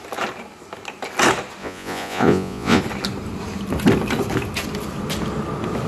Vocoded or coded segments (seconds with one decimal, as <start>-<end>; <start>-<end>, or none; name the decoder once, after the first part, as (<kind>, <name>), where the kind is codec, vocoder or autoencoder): 1.6-2.8 (vocoder, Vocos)